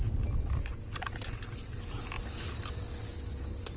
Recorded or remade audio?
recorded